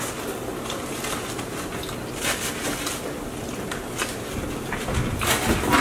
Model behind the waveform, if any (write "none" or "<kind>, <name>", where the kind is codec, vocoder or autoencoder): none